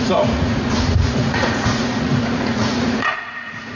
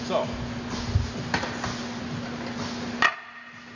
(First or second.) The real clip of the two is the second